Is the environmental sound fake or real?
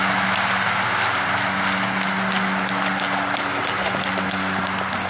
real